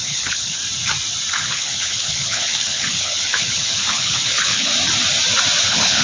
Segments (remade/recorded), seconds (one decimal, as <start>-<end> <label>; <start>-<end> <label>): 0.0-0.6 remade; 0.6-1.3 recorded; 1.3-4.7 remade; 4.7-5.6 recorded; 5.6-6.0 remade